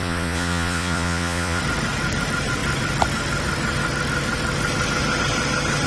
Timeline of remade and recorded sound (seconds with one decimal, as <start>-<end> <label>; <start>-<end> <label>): 0.0-1.6 remade; 1.6-5.9 recorded